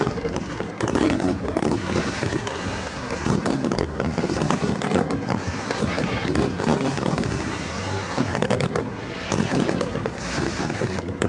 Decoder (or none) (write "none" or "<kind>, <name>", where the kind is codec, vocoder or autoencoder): codec, SNAC